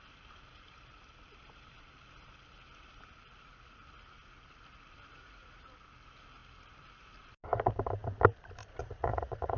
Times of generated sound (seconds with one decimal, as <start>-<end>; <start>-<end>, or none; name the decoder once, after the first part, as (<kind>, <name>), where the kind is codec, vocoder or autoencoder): 5.1-5.6 (vocoder, Vocos); 8.6-9.6